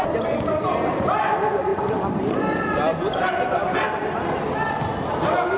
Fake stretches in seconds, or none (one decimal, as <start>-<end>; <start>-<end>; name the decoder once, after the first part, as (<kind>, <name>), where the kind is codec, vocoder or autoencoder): none